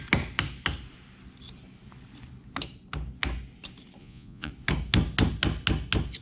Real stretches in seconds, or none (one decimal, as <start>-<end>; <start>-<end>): 0.0-4.0; 4.5-6.2